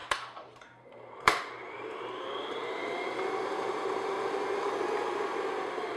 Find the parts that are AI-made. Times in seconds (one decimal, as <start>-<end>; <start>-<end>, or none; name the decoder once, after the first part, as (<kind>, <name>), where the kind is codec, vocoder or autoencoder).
0.0-3.2 (vocoder, BigVGAN v2)